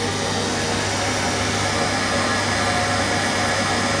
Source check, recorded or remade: recorded